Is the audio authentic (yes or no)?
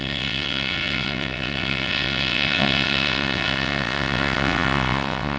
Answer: no